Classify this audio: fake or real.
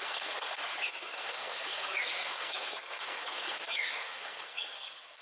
fake